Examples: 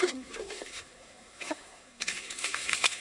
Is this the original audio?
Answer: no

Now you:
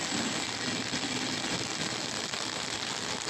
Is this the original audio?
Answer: yes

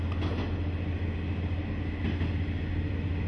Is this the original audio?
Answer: yes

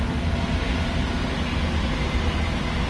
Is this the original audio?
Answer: yes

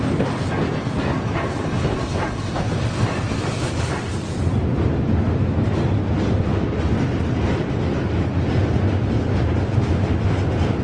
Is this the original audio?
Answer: yes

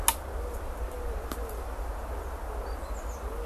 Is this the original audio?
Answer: yes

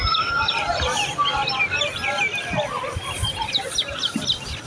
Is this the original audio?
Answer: yes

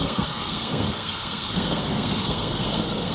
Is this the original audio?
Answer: no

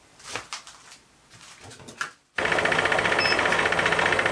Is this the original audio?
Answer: yes